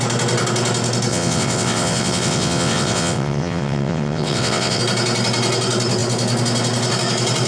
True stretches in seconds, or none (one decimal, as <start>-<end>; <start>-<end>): 0.0-1.1; 4.8-7.5